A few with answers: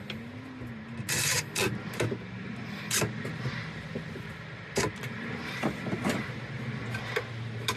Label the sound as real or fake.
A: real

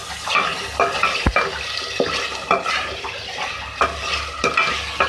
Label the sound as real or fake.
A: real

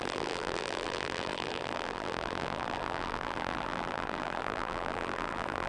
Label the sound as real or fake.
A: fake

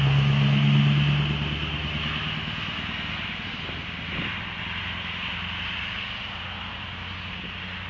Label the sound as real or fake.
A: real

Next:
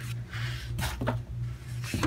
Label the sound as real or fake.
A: fake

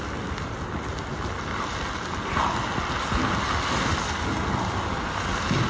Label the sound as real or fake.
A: real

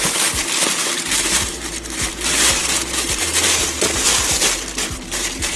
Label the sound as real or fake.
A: fake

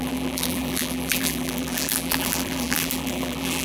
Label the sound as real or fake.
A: fake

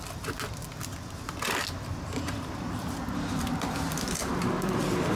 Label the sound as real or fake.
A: real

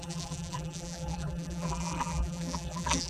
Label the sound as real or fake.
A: fake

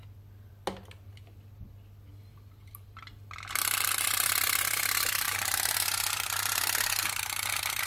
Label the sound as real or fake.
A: real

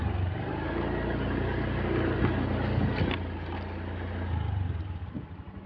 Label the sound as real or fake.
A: real